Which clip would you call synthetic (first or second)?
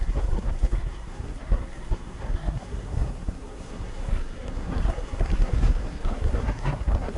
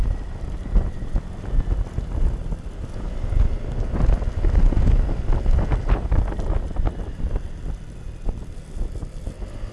first